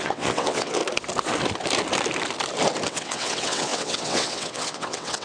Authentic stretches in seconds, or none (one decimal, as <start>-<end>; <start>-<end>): 0.8-2.9